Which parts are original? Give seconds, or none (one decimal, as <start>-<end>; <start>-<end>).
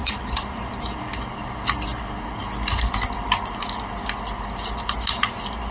1.0-5.7